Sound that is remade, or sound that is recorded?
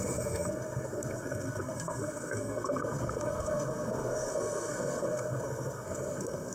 remade